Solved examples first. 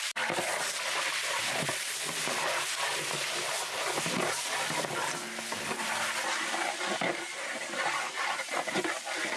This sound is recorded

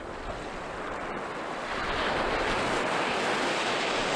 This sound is recorded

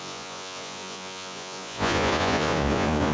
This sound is remade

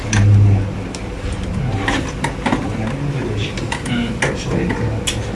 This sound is recorded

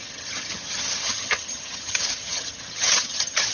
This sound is remade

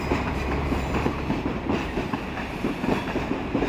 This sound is remade